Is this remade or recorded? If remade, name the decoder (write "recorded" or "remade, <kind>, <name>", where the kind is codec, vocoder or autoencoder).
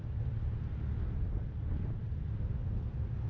recorded